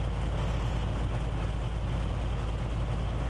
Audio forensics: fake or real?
real